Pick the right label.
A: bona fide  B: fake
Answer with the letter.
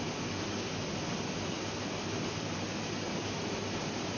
A